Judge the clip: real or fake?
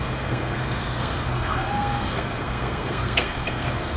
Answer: fake